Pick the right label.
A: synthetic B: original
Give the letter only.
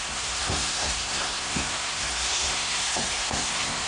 A